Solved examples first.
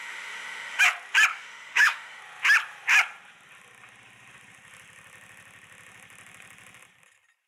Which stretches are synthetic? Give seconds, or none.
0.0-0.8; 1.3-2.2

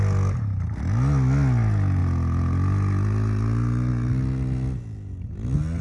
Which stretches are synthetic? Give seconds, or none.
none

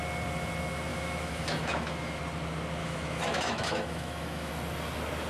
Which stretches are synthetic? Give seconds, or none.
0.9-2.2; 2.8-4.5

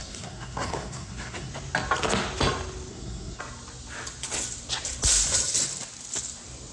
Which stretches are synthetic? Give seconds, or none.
0.0-1.5; 2.9-3.4